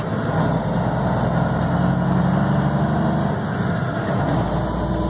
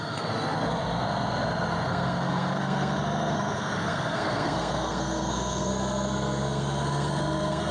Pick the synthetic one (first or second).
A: second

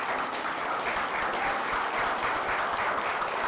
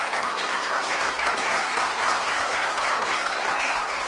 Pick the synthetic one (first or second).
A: second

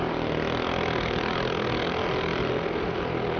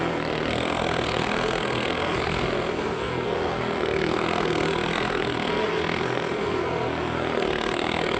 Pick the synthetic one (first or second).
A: second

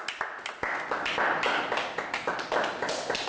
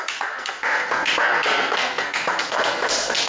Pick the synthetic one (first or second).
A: second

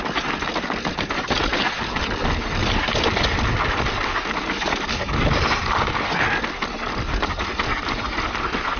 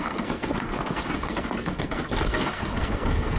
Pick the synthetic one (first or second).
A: second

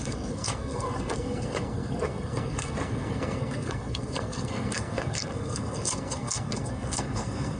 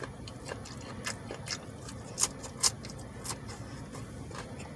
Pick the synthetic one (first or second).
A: first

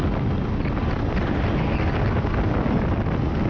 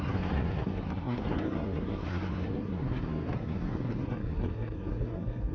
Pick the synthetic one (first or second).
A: second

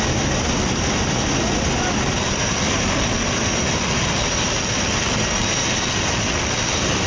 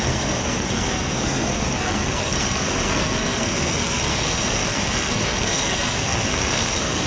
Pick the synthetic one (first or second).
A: second